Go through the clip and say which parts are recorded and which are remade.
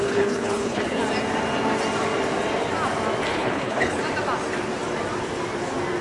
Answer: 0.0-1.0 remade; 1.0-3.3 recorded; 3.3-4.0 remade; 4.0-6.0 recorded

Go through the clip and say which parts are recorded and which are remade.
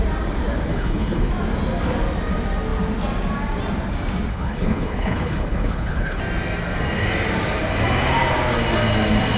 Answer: 0.0-0.7 recorded; 0.7-1.3 remade; 1.3-4.3 recorded; 4.3-6.2 remade; 6.2-9.4 recorded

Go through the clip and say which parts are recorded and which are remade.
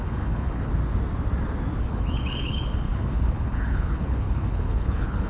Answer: 0.0-0.7 remade; 0.7-1.8 recorded; 1.8-5.3 remade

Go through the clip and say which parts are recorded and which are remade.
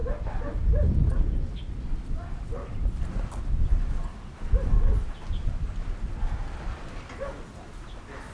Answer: 0.0-8.3 recorded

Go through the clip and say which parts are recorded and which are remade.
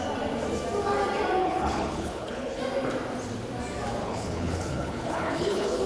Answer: 0.0-1.4 recorded; 1.4-2.6 remade; 2.6-4.0 recorded; 4.0-5.9 remade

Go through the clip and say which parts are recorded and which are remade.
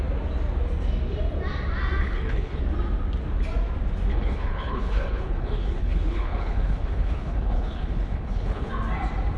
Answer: 0.0-2.0 recorded; 2.0-2.6 remade; 2.6-4.1 recorded; 4.1-8.7 remade; 8.7-9.4 recorded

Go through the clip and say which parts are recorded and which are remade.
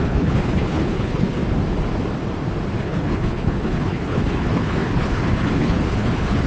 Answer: 0.0-1.4 remade; 1.4-2.8 recorded; 2.8-6.5 remade